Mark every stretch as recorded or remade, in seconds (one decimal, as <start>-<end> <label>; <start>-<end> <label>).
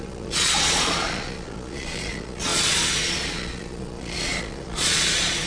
0.0-5.5 remade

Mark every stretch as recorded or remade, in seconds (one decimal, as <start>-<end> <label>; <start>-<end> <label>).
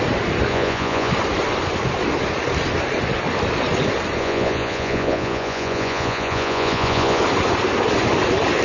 0.0-0.5 recorded; 0.5-1.1 remade; 1.1-4.2 recorded; 4.2-7.2 remade; 7.2-8.6 recorded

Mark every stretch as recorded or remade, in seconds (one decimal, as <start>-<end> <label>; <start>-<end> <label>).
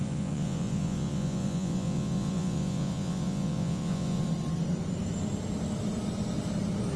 0.0-4.2 remade; 4.2-7.0 recorded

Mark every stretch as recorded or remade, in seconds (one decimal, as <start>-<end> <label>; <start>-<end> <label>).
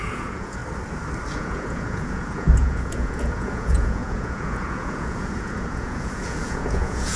0.0-0.6 remade; 0.6-1.3 recorded; 1.3-7.2 remade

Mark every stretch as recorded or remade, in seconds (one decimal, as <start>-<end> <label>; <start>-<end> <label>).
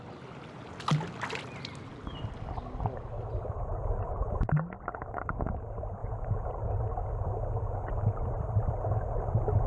0.0-6.0 recorded; 6.0-6.5 remade; 6.5-9.7 recorded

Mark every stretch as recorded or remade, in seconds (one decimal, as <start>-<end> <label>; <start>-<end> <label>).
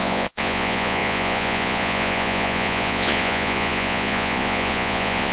0.0-5.3 remade